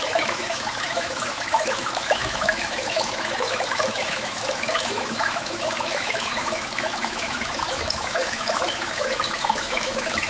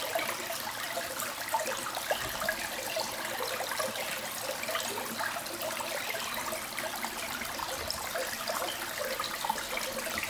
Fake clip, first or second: first